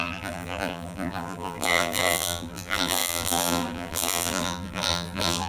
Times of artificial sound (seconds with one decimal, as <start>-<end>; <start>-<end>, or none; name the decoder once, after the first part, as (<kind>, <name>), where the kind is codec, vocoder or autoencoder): 0.0-5.5 (vocoder, BigVGAN v2)